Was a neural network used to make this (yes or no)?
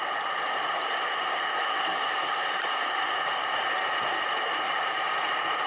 no